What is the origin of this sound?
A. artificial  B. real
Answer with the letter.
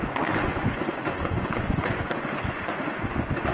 A